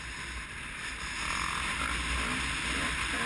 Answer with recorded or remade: recorded